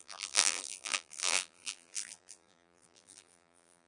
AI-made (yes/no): yes